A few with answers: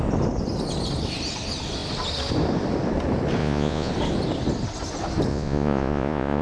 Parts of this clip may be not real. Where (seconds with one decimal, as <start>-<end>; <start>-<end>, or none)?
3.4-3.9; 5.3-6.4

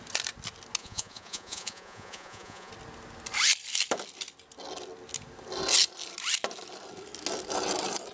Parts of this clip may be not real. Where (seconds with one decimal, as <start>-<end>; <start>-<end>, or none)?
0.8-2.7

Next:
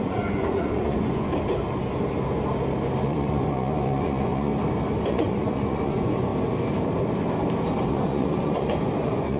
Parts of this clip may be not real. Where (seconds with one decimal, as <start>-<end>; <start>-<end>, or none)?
0.0-1.3; 3.0-4.5; 5.1-6.3; 7.9-9.4

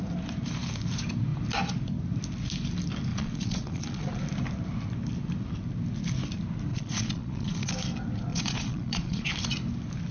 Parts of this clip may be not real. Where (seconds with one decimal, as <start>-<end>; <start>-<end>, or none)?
3.1-4.1; 6.7-7.7; 8.3-9.3